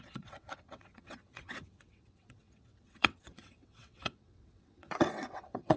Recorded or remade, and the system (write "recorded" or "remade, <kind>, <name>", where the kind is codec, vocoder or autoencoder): remade, vocoder, WaveNeXt